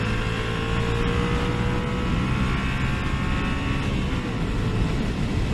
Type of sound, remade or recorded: recorded